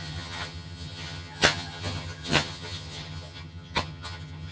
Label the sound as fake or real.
fake